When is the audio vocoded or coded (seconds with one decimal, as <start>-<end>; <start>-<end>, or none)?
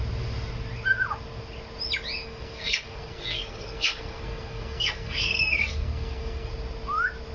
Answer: 2.2-6.5